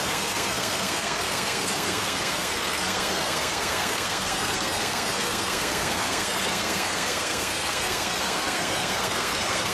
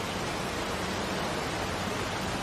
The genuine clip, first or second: second